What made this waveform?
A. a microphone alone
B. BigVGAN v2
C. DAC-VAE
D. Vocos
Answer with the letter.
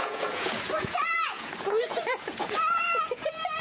D